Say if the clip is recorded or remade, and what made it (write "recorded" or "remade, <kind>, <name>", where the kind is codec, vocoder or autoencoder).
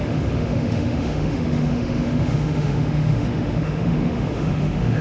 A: remade, autoencoder, DAC-VAE